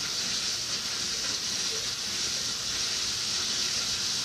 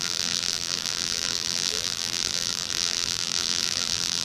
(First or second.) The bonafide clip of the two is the first